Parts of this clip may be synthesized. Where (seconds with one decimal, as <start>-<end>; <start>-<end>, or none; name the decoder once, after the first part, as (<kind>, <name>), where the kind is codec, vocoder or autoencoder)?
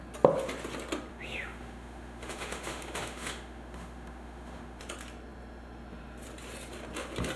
1.1-4.8 (autoencoder, DAC-VAE)